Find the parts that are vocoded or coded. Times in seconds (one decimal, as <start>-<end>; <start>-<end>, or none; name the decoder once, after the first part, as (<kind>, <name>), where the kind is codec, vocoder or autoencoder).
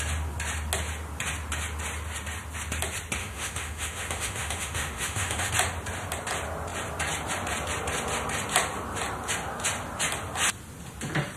3.2-5.5 (autoencoder, DAC-VAE)